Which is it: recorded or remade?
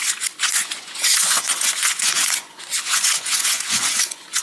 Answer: remade